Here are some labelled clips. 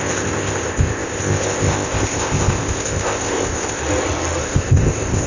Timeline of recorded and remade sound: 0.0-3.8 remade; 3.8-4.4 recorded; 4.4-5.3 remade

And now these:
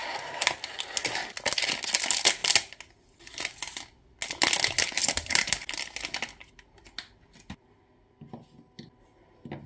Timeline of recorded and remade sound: 0.0-9.7 recorded

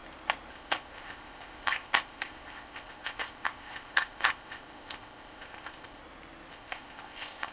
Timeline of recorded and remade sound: 0.0-0.5 recorded; 0.5-6.0 remade; 6.0-6.5 recorded; 6.5-7.5 remade

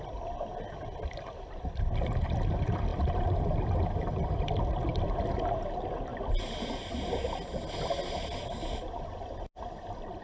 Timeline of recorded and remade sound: 0.0-10.2 recorded

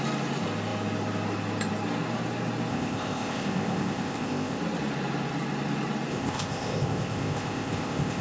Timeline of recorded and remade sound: 0.0-2.7 recorded; 2.7-4.6 remade; 4.6-6.1 recorded; 6.1-8.2 remade

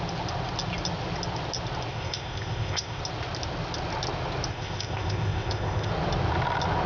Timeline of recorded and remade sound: 0.0-1.9 recorded; 1.9-3.0 remade; 3.0-4.5 recorded; 4.5-5.9 remade; 5.9-6.9 recorded

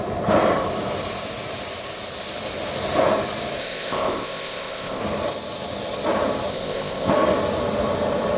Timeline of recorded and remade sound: 0.0-3.6 recorded; 3.6-5.0 remade; 5.0-6.5 recorded; 6.5-7.1 remade; 7.1-8.4 recorded